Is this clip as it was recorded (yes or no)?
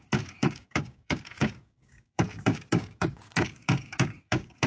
no